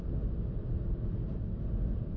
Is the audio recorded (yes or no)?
yes